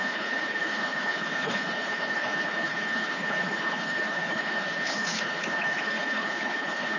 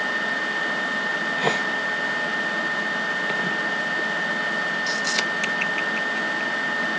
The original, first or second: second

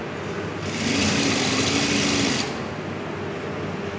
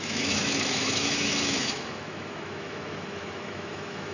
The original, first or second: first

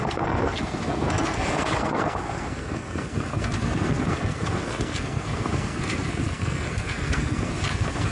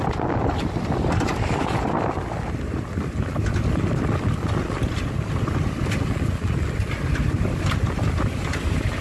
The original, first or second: second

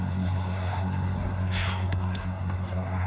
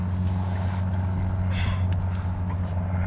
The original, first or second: second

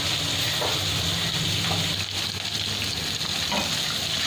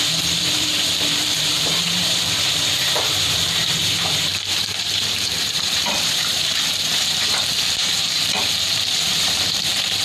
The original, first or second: first